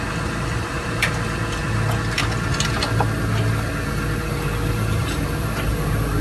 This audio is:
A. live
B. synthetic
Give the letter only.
A